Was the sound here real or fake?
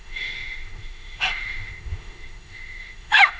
fake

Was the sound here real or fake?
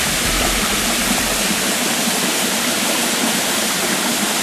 real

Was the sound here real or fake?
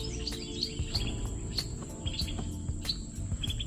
real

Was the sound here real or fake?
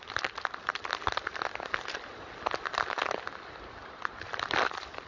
real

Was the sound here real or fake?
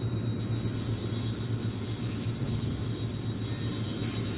real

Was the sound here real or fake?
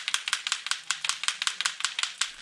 real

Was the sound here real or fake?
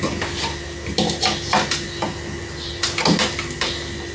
real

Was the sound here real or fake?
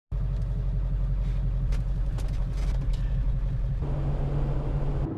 real